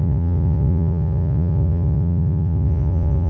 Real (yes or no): no